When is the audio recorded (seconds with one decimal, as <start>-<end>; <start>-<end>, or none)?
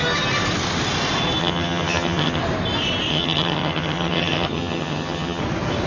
0.0-1.4; 2.4-3.1; 5.4-5.9